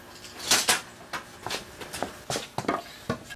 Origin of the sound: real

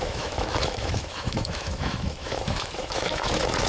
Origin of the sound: fake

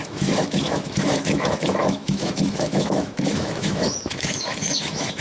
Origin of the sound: fake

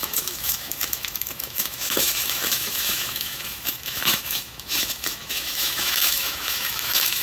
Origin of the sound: fake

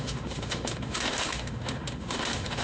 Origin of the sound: fake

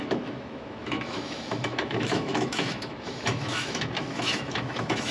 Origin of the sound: fake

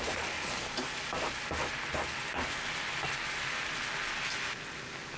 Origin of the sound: real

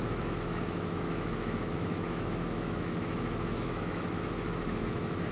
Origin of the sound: fake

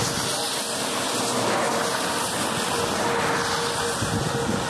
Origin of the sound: real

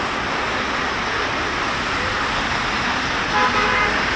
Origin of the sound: real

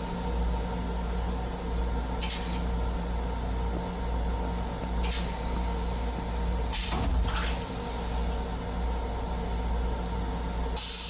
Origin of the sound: real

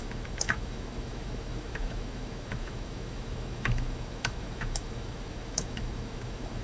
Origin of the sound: fake